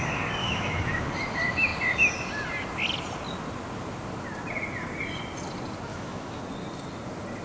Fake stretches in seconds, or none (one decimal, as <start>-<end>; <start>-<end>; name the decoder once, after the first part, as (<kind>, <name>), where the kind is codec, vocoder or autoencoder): 0.4-1.1 (autoencoder, DAC-VAE); 5.9-6.4